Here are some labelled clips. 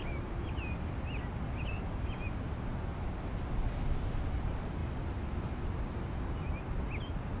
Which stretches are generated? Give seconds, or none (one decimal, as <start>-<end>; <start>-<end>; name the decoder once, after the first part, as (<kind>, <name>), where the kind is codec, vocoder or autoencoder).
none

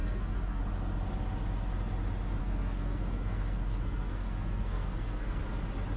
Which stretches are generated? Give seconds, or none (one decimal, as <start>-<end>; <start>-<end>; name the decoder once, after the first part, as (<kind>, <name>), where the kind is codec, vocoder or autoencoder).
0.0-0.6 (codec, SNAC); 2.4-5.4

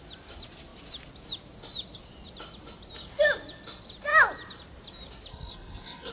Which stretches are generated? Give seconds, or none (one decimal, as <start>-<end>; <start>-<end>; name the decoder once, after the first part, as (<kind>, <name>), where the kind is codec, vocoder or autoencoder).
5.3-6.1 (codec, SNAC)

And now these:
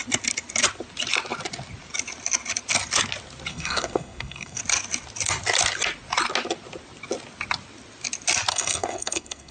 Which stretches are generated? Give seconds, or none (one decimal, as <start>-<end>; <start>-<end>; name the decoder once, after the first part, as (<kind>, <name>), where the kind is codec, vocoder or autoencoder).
3.5-4.6 (codec, SNAC); 8.5-9.5

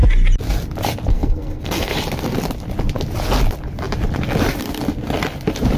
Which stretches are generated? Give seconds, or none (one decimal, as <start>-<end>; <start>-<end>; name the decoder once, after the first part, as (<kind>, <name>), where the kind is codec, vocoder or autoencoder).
1.1-1.9 (codec, SNAC)

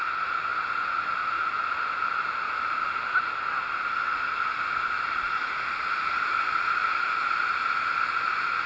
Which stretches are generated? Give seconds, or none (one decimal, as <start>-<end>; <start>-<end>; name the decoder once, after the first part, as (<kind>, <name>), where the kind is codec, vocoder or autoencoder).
none